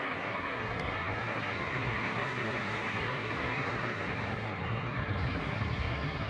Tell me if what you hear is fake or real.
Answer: fake